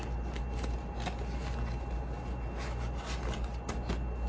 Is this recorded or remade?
recorded